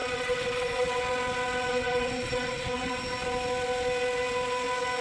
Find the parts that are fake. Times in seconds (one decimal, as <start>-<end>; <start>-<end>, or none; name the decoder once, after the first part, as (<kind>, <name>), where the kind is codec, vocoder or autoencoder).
0.0-1.0 (vocoder, WaveNeXt); 1.7-2.9